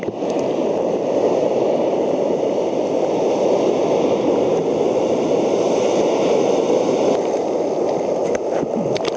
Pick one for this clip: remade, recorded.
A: recorded